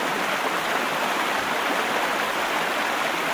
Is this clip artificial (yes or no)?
no